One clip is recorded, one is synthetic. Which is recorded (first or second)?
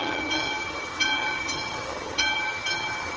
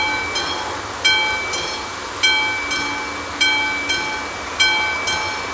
second